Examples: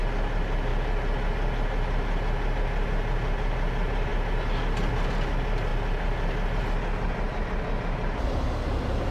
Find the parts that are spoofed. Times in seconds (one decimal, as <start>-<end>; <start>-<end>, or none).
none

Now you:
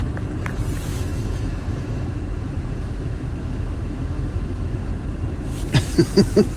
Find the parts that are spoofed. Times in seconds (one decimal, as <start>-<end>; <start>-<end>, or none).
0.9-4.9

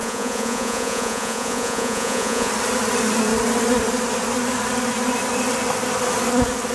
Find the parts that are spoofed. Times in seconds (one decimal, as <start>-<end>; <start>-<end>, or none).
0.0-2.5

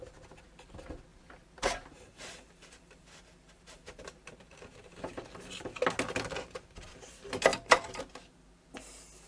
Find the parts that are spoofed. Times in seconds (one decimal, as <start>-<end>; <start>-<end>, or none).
1.1-4.8; 7.5-8.0